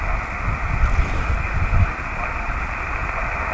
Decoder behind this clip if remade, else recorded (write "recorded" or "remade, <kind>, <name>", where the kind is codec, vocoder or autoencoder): recorded